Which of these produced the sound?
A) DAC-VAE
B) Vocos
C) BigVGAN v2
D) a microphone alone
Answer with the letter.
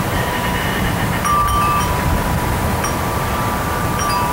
C